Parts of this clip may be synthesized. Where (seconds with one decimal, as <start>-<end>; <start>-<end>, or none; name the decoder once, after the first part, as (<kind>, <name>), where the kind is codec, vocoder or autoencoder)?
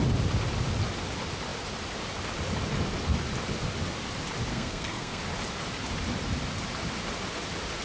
4.5-5.2 (codec, SNAC)